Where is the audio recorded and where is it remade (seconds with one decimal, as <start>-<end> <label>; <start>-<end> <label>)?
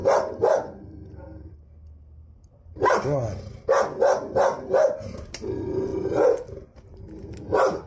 0.0-7.9 recorded